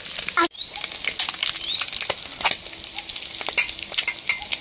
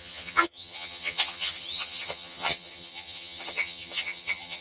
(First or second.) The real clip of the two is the first